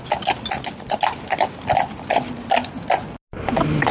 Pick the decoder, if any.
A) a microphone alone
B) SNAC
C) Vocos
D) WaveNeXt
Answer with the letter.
A